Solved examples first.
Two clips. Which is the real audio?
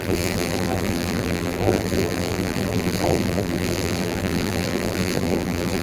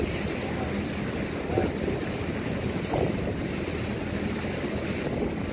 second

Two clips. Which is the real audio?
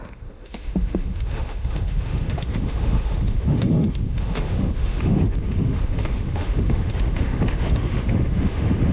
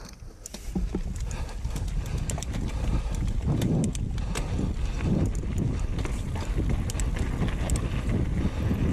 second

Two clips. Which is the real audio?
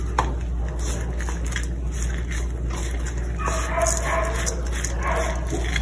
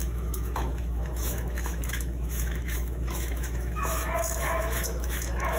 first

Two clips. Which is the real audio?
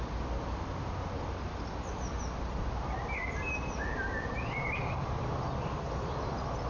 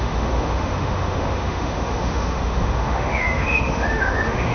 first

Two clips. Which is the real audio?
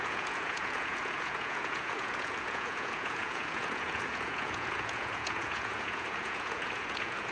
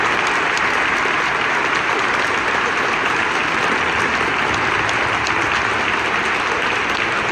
second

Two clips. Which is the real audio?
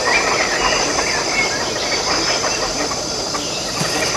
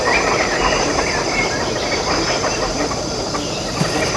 first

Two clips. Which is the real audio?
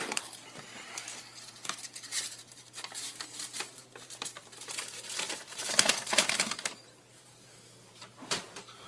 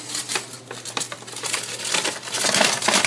second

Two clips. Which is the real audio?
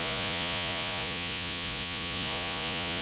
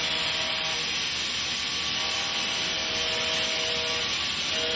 second